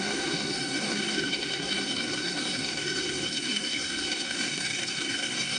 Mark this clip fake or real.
fake